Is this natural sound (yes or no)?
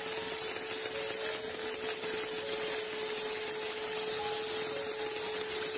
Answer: yes